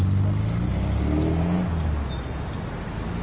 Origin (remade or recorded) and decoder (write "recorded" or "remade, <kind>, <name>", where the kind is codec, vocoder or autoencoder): recorded